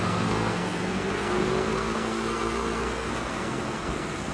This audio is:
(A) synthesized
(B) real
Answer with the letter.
A